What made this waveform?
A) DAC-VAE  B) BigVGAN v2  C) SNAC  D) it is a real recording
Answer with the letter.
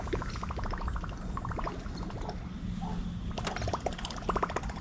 D